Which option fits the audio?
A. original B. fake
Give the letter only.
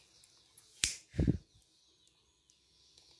A